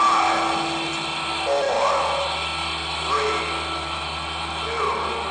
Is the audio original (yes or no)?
yes